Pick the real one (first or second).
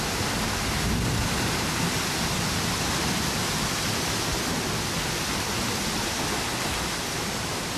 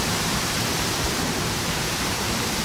first